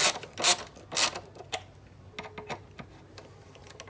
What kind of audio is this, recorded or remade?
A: recorded